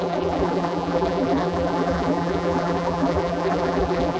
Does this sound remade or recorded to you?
remade